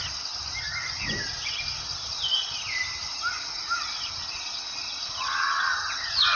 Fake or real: real